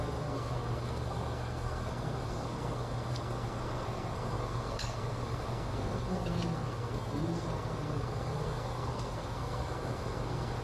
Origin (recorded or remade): remade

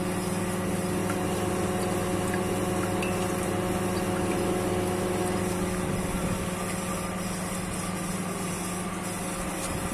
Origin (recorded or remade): recorded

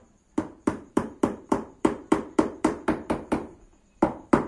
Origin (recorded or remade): remade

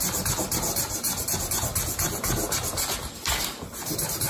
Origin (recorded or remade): recorded